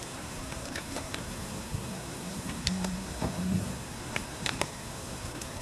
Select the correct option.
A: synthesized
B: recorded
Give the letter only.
A